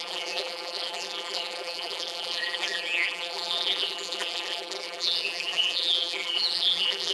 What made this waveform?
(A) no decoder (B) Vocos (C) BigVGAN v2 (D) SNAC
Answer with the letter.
C